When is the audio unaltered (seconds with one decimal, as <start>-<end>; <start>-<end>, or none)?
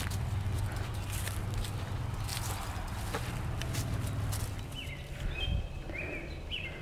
0.0-6.8